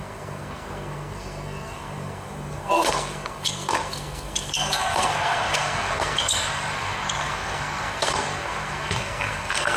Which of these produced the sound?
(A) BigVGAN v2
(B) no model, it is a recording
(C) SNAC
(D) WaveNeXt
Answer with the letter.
C